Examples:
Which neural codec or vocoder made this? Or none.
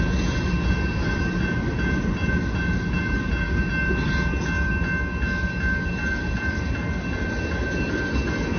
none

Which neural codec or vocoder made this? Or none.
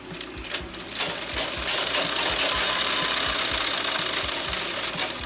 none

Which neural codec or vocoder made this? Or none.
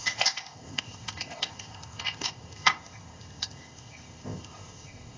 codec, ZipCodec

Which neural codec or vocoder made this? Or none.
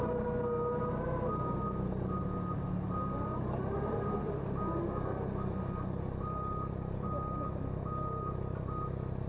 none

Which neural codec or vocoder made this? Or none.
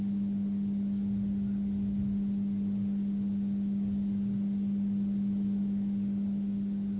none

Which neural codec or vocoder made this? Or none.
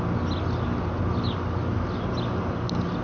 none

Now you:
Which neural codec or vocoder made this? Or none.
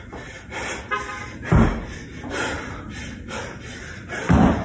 none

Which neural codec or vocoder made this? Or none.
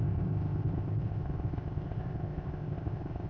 codec, ZipCodec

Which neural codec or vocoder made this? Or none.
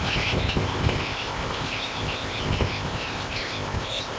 codec, ZipCodec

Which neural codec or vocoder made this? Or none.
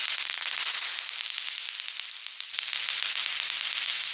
none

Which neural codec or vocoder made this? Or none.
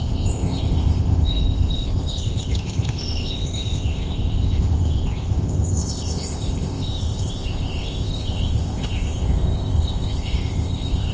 codec, ZipCodec